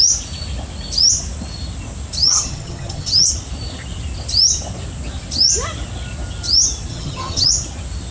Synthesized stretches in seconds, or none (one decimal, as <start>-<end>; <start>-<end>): 2.2-3.3; 6.9-7.5